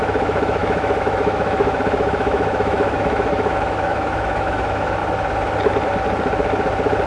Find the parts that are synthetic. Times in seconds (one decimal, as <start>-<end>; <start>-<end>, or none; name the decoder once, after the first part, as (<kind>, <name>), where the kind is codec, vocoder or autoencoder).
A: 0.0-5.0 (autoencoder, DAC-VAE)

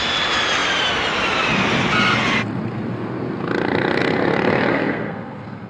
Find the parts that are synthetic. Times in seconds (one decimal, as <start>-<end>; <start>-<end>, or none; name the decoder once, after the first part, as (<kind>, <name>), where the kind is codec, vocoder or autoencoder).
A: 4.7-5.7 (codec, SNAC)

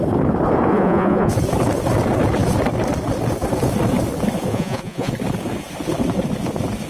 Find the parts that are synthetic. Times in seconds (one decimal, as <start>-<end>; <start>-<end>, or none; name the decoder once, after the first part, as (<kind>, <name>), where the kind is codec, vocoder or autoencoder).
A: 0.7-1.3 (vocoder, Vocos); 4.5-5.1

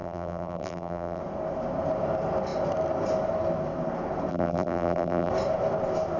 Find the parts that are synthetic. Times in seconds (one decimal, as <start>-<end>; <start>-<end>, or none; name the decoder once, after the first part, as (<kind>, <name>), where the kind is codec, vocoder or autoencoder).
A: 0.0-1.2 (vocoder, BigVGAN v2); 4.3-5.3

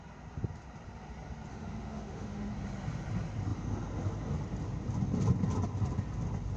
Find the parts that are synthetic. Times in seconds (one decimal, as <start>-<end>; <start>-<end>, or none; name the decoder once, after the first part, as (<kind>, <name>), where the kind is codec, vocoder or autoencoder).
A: 1.5-2.5 (autoencoder, DAC-VAE)

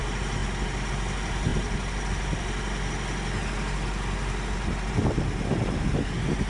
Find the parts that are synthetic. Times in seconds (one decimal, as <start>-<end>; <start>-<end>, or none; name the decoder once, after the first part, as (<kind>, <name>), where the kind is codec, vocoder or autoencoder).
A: none

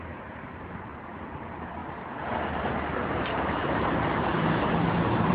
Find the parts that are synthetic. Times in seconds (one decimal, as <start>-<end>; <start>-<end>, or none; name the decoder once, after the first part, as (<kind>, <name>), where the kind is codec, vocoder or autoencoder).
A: 0.0-1.8 (vocoder, BigVGAN v2); 3.2-5.3